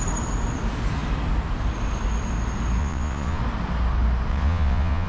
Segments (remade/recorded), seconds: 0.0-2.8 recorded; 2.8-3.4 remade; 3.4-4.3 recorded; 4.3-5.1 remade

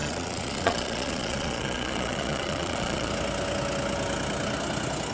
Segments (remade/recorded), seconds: 0.0-3.1 remade; 3.1-5.1 recorded

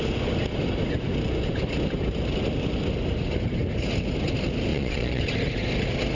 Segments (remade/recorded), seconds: 0.0-4.7 recorded; 4.7-5.2 remade; 5.2-6.1 recorded

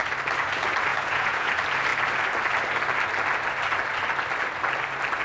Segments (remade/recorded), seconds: 0.0-0.9 recorded; 0.9-1.5 remade; 1.5-5.2 recorded

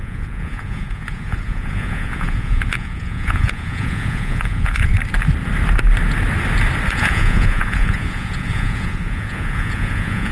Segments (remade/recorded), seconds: 0.0-4.9 remade; 4.9-6.9 recorded; 6.9-10.3 remade

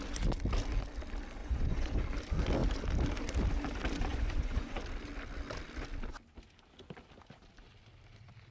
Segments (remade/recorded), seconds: 0.0-1.4 recorded; 1.4-2.0 remade; 2.0-4.1 recorded; 4.1-4.8 remade; 4.8-8.5 recorded

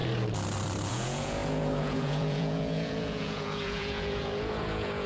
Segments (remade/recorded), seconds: 0.0-0.9 recorded; 0.9-5.1 remade

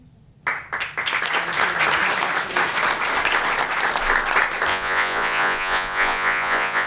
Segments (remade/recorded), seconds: 0.0-4.7 recorded; 4.7-6.9 remade